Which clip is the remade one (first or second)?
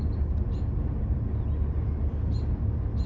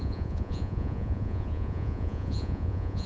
second